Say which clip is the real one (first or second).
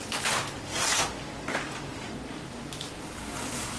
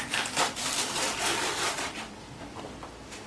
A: first